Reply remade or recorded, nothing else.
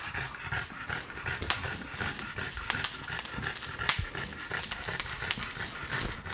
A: recorded